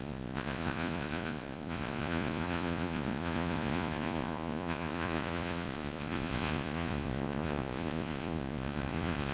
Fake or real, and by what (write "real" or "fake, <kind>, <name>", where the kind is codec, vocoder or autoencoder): fake, vocoder, Vocos